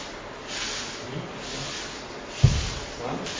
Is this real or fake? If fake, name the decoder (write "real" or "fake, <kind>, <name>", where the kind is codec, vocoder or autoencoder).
real